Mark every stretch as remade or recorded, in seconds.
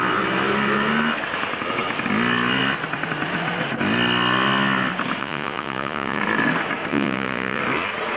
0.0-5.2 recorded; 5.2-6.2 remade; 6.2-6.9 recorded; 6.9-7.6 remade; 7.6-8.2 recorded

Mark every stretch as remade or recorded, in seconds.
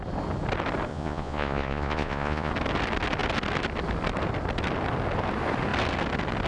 0.0-0.9 recorded; 0.9-2.5 remade; 2.5-6.5 recorded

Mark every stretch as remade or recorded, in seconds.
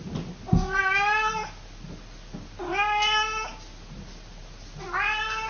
0.0-5.5 recorded